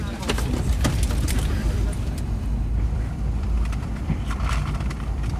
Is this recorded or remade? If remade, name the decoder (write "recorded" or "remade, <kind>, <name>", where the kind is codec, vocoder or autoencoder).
remade, vocoder, BigVGAN v2